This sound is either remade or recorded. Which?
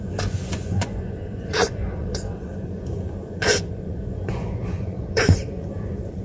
remade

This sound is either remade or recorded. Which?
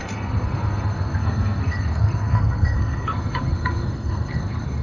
remade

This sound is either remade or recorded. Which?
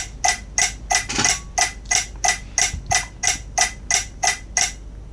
recorded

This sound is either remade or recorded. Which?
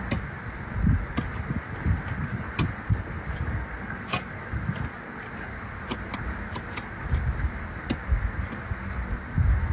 recorded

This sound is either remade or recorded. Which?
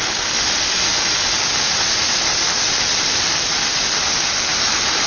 recorded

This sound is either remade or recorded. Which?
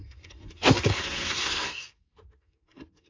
remade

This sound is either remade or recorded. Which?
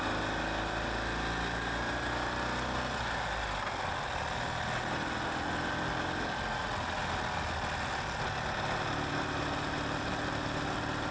recorded